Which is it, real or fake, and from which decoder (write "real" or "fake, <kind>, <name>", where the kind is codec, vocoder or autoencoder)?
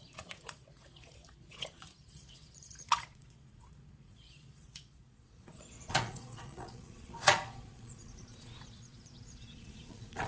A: fake, vocoder, Vocos